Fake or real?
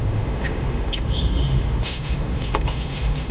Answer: fake